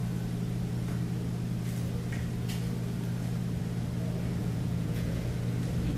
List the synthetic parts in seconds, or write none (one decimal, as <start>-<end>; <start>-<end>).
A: 4.4-5.3